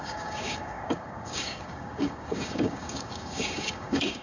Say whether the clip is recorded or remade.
remade